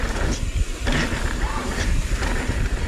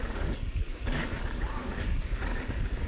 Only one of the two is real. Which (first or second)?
first